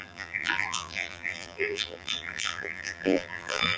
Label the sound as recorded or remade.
remade